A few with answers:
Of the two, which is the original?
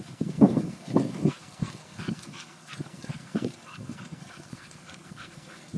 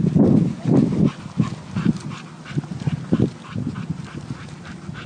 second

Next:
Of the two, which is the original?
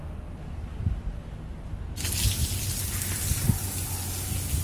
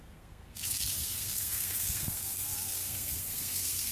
first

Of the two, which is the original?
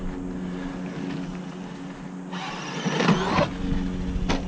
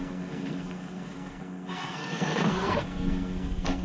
first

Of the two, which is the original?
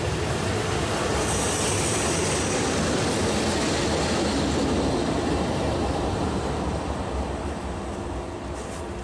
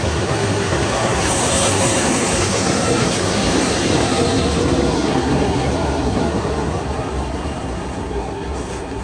first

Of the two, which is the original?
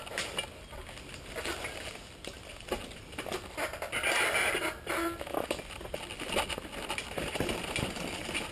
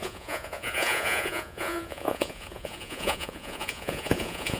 first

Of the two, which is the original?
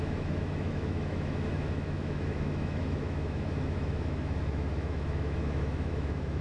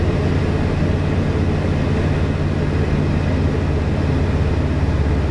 second